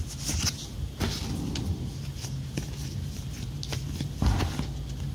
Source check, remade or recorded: recorded